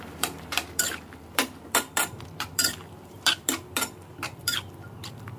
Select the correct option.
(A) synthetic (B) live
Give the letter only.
A